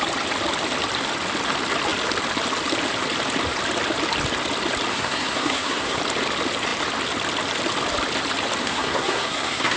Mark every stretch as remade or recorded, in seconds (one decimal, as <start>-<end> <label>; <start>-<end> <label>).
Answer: 0.0-4.9 recorded; 4.9-6.0 remade; 6.0-8.6 recorded; 8.6-9.8 remade